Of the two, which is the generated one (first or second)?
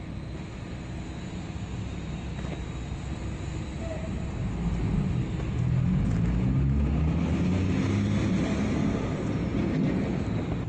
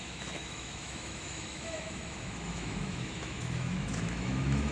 second